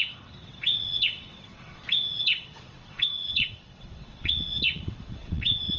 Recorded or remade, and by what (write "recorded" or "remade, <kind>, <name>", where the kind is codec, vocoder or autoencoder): remade, vocoder, WaveNeXt